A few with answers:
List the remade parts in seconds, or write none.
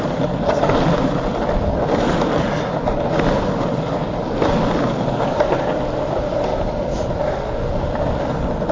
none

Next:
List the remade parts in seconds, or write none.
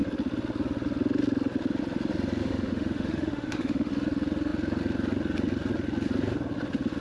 2.4-3.9 (autoencoder, DAC-VAE)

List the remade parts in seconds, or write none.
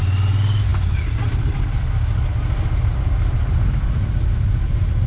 none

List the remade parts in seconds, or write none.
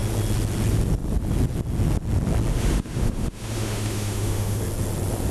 2.5-4.6 (autoencoder, DAC-VAE)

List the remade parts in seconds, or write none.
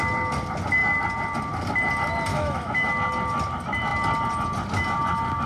2.3-2.9 (autoencoder, DAC-VAE)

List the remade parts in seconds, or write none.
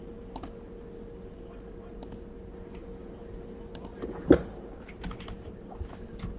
none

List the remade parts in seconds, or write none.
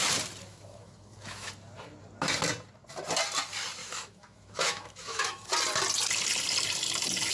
0.5-1.5 (autoencoder, DAC-VAE); 3.8-5.5